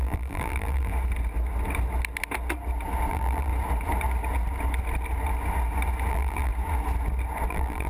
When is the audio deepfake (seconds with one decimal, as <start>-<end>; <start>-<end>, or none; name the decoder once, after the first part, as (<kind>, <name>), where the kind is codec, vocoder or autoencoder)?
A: 0.0-0.9 (vocoder, BigVGAN v2); 3.1-3.5; 6.1-6.5; 7.5-7.9